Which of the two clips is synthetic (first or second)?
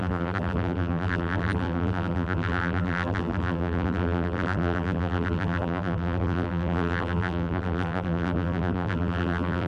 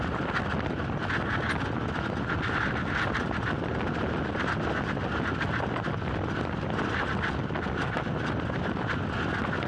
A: first